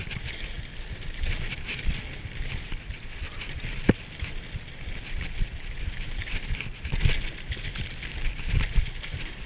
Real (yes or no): yes